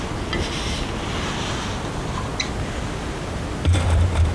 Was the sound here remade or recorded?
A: recorded